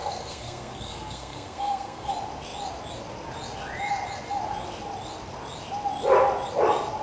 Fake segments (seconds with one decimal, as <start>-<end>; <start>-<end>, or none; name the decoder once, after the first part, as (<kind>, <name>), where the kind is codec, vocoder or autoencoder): 0.0-2.1 (codec, SNAC)